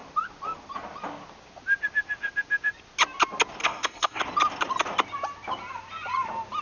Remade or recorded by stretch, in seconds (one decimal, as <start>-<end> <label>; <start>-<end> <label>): 0.0-3.6 recorded; 3.6-4.2 remade; 4.2-6.6 recorded